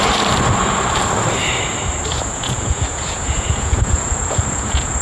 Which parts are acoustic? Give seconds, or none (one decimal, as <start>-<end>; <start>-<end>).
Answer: 0.0-2.1